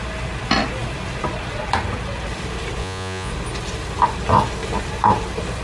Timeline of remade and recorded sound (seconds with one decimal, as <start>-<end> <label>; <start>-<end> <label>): 0.0-2.8 recorded; 2.8-3.3 remade; 3.3-5.6 recorded